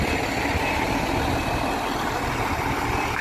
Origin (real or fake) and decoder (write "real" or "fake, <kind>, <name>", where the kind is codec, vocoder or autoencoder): real